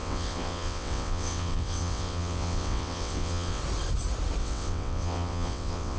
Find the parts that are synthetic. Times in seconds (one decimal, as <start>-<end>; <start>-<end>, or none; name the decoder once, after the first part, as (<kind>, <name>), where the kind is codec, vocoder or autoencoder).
0.0-3.6 (vocoder, WaveNeXt); 4.4-6.0